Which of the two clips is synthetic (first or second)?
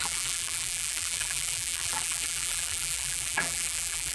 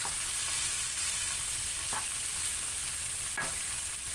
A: first